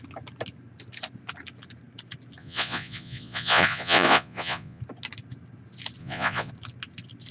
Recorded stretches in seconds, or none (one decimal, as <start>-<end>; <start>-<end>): 0.0-2.4; 4.8-6.0; 6.5-7.3

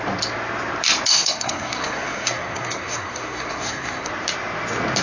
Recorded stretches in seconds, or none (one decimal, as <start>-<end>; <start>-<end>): 0.0-1.1; 4.1-5.0

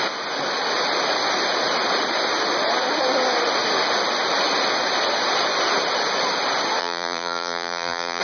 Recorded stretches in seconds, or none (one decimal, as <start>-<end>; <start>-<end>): 0.0-6.8

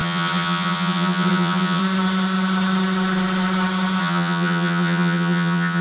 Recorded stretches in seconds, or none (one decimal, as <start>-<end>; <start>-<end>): 1.8-4.0

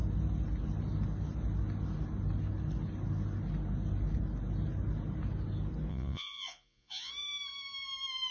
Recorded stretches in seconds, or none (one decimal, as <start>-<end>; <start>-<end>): 0.0-5.9; 7.1-8.3

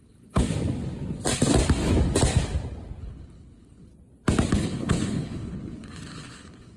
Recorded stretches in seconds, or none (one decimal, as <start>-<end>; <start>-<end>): 0.4-3.0; 3.9-4.5

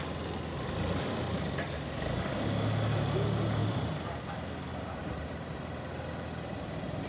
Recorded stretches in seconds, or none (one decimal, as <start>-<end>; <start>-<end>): 0.0-4.7; 5.2-7.1

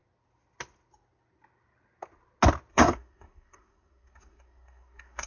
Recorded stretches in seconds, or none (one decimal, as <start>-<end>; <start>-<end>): 0.0-2.7